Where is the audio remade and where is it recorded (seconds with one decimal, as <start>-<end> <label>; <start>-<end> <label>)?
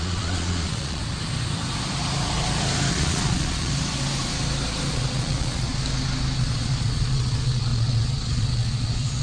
0.0-1.0 remade; 1.0-2.9 recorded; 2.9-3.7 remade; 3.7-4.9 recorded; 4.9-5.7 remade; 5.7-6.4 recorded; 6.4-9.2 remade